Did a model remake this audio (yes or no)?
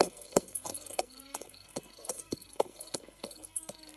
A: yes